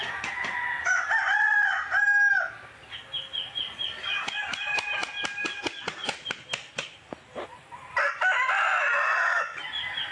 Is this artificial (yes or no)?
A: no